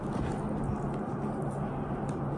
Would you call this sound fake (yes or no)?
no